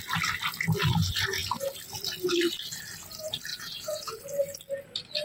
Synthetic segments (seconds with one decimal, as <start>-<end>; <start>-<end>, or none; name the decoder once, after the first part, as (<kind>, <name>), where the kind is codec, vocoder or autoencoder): 3.5-4.2 (vocoder, Vocos)